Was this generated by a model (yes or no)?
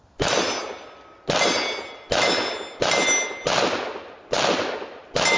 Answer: no